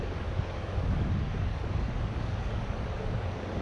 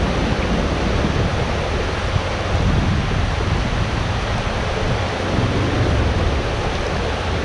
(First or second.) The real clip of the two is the second